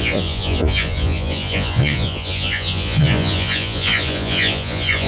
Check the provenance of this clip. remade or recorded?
remade